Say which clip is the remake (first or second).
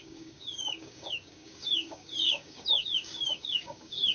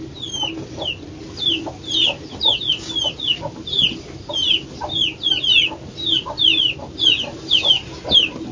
first